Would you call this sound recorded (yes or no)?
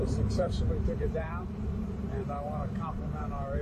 no